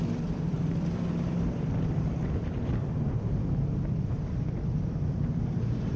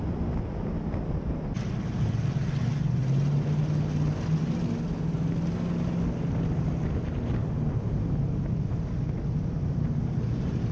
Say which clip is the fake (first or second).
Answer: first